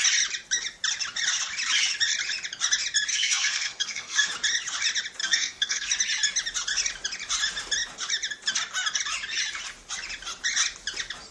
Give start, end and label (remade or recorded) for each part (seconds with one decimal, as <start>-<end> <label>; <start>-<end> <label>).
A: 0.0-3.1 recorded; 3.1-4.3 remade; 4.3-5.2 recorded; 5.2-5.9 remade; 5.9-11.3 recorded